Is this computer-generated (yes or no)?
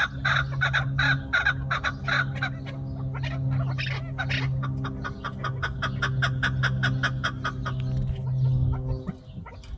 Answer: no